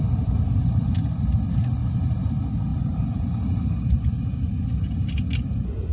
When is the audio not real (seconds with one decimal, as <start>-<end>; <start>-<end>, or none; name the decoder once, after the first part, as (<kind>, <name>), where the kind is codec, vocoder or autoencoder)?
1.8-2.3 (vocoder, BigVGAN v2); 2.7-4.5